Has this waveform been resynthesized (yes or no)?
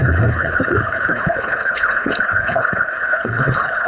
yes